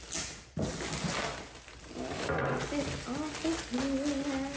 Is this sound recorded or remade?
recorded